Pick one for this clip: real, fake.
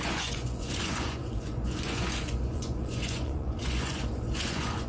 fake